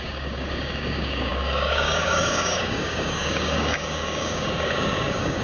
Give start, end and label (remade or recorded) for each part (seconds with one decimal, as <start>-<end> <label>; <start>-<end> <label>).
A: 0.0-5.4 remade